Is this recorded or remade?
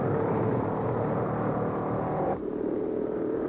remade